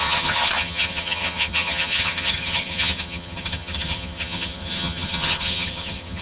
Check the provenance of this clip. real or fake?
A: fake